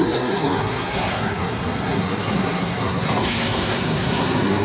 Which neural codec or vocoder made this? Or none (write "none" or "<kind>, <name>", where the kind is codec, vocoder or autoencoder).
codec, SNAC